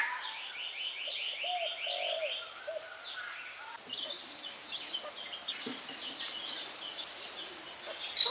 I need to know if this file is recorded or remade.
recorded